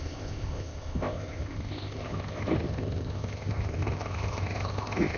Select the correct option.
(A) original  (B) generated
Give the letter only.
B